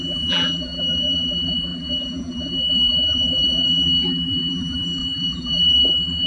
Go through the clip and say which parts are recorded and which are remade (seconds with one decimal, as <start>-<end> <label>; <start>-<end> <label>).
0.0-6.3 remade